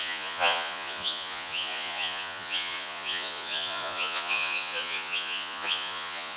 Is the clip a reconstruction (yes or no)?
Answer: yes